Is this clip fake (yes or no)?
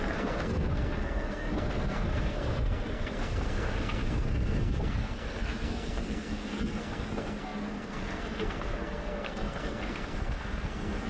yes